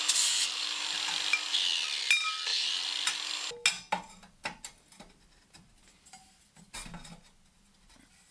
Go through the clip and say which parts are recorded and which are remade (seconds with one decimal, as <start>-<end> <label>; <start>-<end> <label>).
0.0-8.3 recorded